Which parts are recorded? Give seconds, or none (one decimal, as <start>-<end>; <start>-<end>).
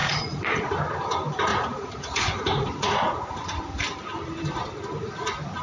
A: 0.7-1.5; 3.4-5.6